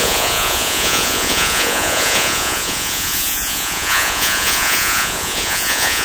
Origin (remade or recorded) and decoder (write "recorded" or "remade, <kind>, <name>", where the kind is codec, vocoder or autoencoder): remade, vocoder, Vocos